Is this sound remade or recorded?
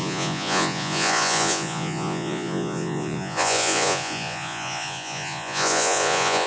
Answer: remade